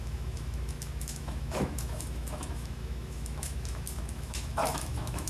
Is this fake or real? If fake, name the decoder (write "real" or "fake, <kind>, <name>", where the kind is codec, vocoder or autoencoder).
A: fake, autoencoder, DAC-VAE